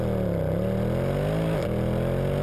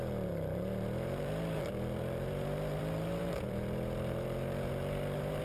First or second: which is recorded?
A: first